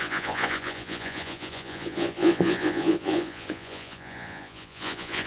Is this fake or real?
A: fake